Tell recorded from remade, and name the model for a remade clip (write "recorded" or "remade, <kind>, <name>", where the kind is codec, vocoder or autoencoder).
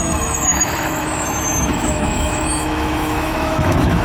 remade, autoencoder, DAC-VAE